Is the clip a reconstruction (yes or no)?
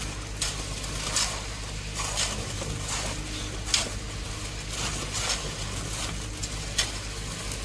no